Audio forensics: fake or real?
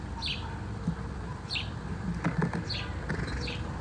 fake